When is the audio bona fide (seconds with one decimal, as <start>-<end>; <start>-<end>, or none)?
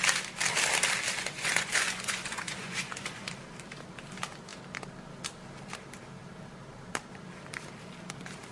0.0-1.2; 3.3-8.5